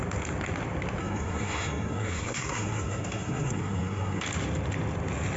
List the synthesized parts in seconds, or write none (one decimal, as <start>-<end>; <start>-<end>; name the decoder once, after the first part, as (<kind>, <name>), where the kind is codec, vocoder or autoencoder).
1.0-4.2 (codec, SNAC)